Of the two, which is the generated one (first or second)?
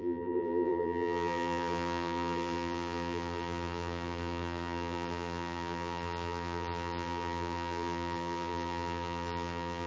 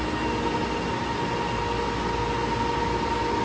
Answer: first